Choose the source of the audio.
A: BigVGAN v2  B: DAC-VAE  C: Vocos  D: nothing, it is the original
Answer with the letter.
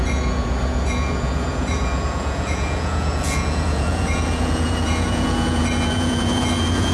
C